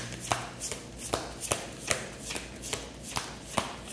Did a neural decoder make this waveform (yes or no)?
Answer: no